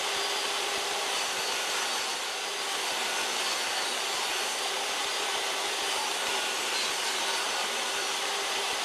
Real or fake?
real